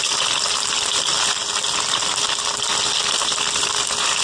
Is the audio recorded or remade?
recorded